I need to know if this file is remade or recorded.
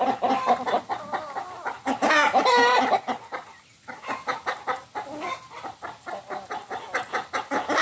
recorded